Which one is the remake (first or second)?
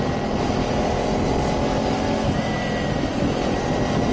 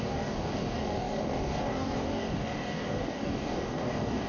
second